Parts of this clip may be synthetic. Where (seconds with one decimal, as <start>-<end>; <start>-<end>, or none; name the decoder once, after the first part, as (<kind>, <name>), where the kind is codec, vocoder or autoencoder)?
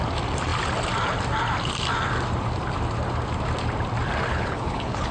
4.3-5.1 (codec, HILCodec)